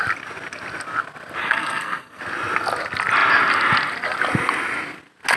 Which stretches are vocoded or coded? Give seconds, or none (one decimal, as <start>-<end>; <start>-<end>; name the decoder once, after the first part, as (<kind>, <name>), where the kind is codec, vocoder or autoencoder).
1.4-2.2 (codec, SNAC)